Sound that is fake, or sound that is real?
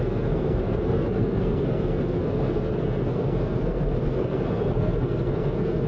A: fake